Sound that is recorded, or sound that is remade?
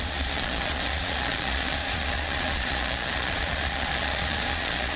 remade